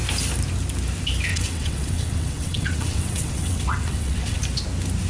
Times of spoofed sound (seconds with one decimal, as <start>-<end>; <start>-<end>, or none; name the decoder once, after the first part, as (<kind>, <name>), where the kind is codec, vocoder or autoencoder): 1.3-4.4 (vocoder, WaveNeXt)